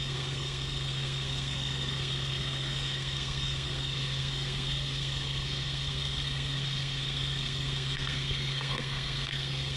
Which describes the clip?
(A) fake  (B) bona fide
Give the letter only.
A